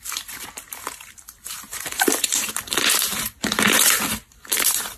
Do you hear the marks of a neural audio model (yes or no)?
yes